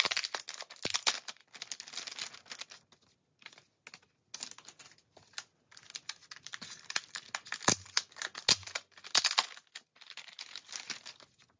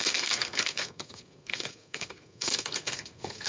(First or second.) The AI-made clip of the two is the second